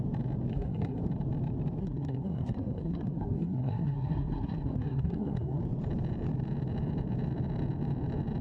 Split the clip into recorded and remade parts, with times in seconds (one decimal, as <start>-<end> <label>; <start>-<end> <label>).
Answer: 0.0-0.5 recorded; 0.5-1.0 remade; 1.0-1.8 recorded; 1.8-5.6 remade; 5.6-8.4 recorded